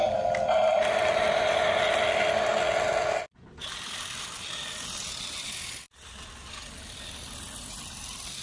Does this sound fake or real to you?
real